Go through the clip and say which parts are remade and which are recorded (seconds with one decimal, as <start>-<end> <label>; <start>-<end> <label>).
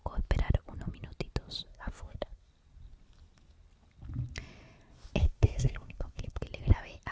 0.0-1.7 recorded; 1.7-2.5 remade; 2.5-5.2 recorded; 5.2-6.4 remade; 6.4-7.1 recorded